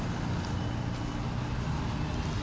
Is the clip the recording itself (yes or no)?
yes